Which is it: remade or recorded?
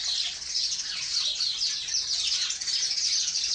recorded